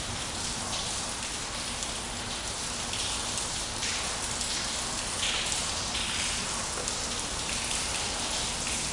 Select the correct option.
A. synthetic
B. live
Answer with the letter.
B